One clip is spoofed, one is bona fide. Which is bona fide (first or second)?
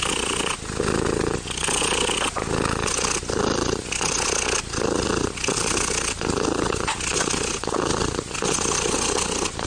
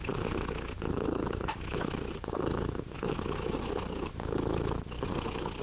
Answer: first